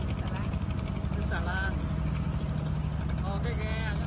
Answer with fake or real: real